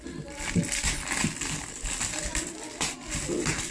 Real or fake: real